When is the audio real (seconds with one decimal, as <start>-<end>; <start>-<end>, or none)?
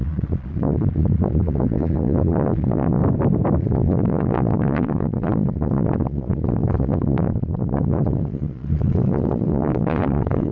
3.0-3.6